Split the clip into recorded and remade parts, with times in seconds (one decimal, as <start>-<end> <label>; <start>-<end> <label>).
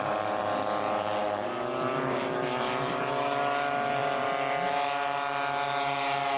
0.0-6.4 recorded